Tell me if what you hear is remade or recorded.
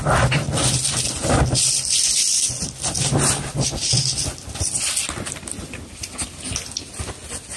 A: remade